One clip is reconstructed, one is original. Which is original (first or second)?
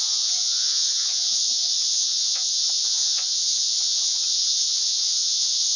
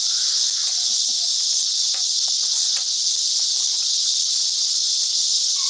second